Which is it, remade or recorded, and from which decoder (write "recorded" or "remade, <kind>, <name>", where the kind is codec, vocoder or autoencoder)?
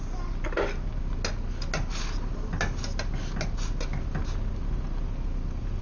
recorded